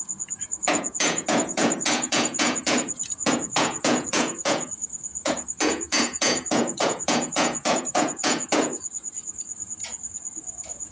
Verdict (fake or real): fake